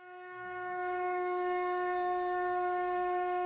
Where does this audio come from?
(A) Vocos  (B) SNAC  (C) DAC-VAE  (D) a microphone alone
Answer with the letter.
B